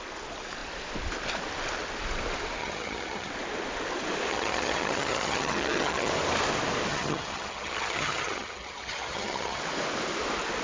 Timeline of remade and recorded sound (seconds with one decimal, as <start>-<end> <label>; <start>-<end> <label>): 0.0-2.6 recorded; 2.6-3.3 remade; 3.3-4.3 recorded; 4.3-6.1 remade; 6.1-6.9 recorded; 6.9-9.6 remade; 9.6-10.6 recorded